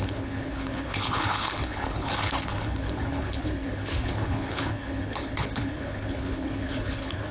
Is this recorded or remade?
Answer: remade